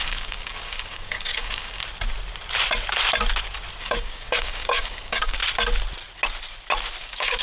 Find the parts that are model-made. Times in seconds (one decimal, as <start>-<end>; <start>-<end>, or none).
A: 0.0-1.8; 3.8-5.4; 7.0-7.4